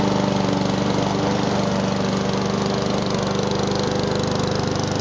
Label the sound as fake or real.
real